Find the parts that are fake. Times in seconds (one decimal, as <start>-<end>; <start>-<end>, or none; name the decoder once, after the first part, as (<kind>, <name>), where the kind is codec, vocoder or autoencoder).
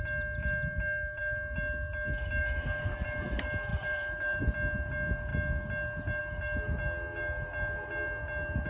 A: 3.7-4.4 (vocoder, BigVGAN v2)